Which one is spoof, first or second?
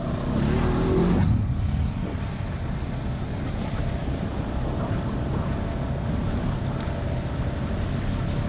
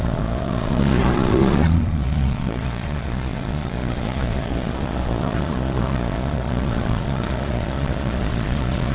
second